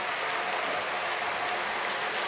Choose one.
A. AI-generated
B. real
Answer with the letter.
B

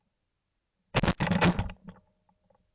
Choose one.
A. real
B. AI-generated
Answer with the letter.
A